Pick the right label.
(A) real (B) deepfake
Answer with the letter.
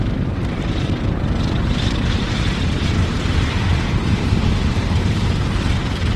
B